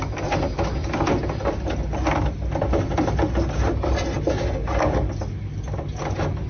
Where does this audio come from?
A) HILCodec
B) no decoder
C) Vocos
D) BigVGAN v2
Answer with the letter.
B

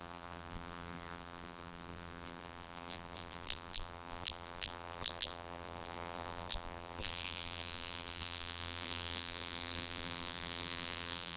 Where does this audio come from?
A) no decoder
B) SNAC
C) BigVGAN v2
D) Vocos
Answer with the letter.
C